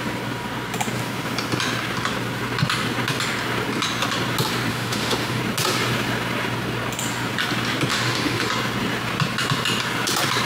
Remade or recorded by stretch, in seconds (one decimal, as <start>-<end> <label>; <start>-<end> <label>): 0.0-4.7 recorded; 4.7-5.4 remade; 5.4-7.9 recorded; 7.9-8.5 remade; 8.5-10.5 recorded